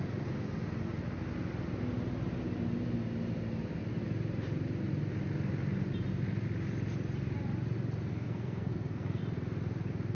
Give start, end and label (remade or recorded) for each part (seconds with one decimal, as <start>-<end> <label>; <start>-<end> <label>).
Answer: 0.0-8.1 recorded; 8.1-9.2 remade; 9.2-10.1 recorded